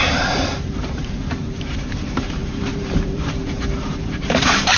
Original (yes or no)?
no